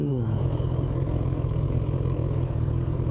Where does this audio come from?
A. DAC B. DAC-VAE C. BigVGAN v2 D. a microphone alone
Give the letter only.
A